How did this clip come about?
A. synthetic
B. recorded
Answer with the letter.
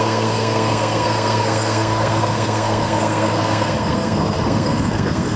A